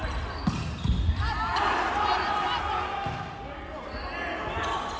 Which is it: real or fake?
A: real